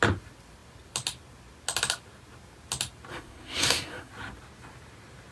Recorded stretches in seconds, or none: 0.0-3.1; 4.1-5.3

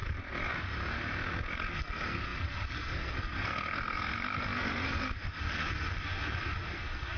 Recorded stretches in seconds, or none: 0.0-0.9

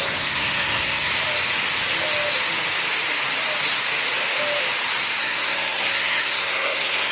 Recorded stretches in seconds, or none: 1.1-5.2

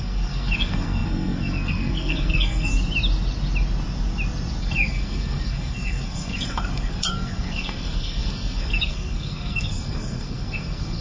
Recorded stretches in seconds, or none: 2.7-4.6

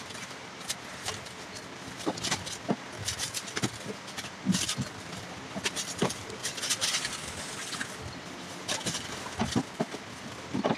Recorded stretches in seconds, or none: 0.0-10.8